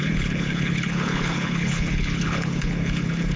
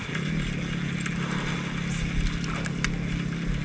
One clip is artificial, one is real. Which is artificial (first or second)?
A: first